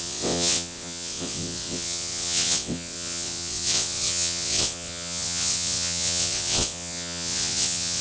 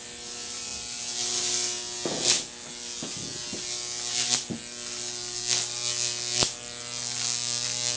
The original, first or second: second